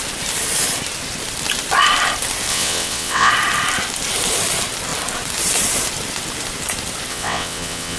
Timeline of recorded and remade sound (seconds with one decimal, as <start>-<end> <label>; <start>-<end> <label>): 0.0-2.5 recorded; 2.5-3.3 remade; 3.3-7.1 recorded; 7.1-8.0 remade